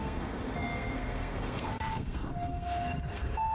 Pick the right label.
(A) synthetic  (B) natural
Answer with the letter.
A